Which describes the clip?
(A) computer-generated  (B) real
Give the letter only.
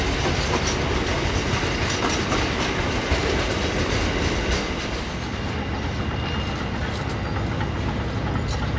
B